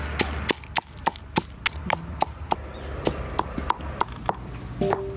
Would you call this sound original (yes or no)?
yes